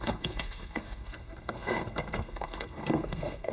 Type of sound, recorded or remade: remade